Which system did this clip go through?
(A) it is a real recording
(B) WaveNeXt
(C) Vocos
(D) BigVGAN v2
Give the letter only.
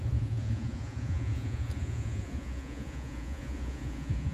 C